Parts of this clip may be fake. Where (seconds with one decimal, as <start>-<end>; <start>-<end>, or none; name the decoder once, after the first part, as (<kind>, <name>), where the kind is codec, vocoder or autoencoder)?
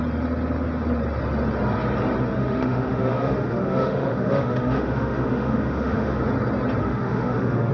2.4-6.2 (autoencoder, DAC-VAE); 6.8-7.7